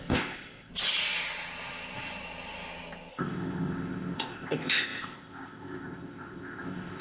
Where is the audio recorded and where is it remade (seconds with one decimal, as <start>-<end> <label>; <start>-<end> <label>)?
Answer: 0.0-0.7 remade; 0.7-3.1 recorded; 3.1-7.0 remade